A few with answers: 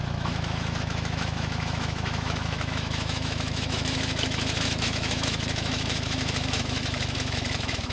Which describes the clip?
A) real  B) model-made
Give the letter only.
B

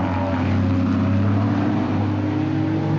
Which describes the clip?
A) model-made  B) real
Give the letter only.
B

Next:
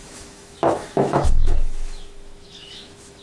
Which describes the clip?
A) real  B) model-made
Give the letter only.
B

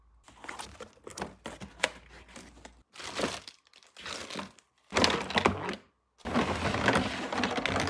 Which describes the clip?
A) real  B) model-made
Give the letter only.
A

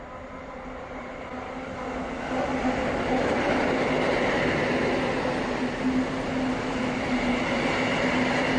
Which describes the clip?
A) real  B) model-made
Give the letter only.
A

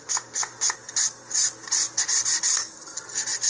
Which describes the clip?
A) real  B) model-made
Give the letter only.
A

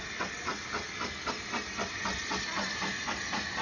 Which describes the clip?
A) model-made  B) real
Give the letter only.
B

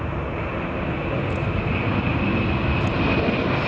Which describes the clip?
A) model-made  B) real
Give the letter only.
B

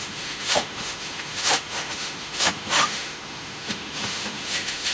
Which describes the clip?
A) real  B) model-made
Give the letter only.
B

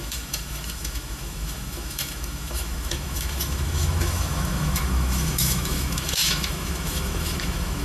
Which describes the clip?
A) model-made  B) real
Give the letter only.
A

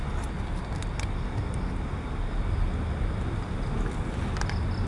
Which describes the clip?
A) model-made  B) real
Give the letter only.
B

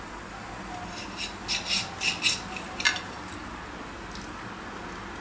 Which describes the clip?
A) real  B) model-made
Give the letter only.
A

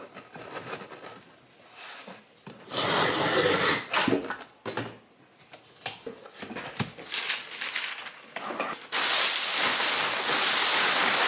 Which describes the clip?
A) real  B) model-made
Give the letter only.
A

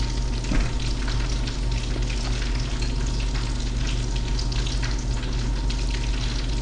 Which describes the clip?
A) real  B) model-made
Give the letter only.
A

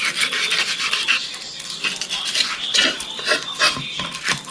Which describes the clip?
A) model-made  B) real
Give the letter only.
B